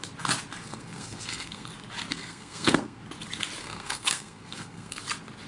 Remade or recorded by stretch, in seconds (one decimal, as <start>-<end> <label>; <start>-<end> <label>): 0.0-0.6 recorded; 0.6-1.7 remade; 1.7-2.1 recorded; 2.1-3.0 remade; 3.0-3.6 recorded; 3.6-5.0 remade; 5.0-5.5 recorded